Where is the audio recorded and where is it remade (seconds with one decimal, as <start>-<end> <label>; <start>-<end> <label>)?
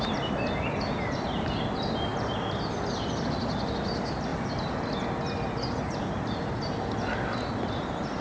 0.0-8.2 recorded